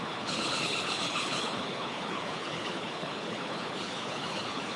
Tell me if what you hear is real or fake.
fake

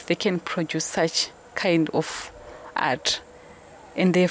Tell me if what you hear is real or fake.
real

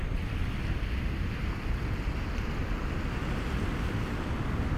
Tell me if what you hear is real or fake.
real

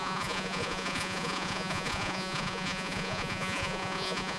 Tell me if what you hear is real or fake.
fake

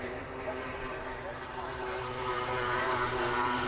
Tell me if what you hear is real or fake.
fake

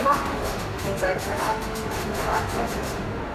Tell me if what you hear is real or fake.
fake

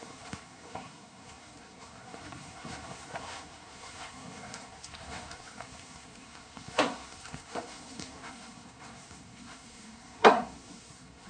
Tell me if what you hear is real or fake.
fake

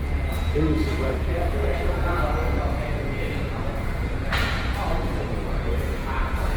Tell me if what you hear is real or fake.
fake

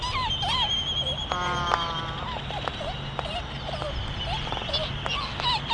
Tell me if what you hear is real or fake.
real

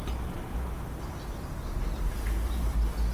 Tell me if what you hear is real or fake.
real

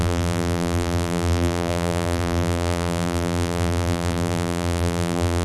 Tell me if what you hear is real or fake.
fake